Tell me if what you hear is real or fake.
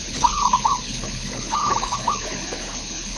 fake